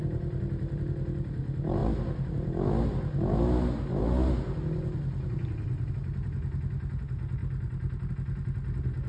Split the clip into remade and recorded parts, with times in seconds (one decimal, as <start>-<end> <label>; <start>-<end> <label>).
0.0-7.4 recorded; 7.4-8.1 remade; 8.1-9.1 recorded